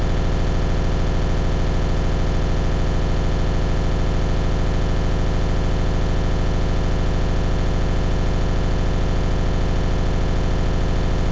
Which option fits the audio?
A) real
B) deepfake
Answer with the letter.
A